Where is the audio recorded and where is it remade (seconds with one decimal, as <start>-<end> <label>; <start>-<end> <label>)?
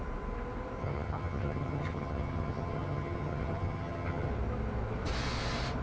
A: 0.0-0.8 recorded; 0.8-4.3 remade; 4.3-5.8 recorded